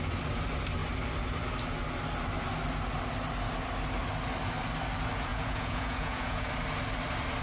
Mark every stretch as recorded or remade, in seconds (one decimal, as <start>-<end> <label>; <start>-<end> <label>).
0.0-5.3 recorded; 5.3-6.5 remade; 6.5-7.4 recorded